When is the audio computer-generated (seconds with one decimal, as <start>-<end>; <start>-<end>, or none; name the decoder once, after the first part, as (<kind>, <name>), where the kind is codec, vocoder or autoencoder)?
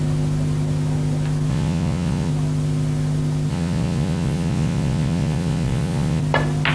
1.5-2.3 (vocoder, Vocos); 3.5-6.2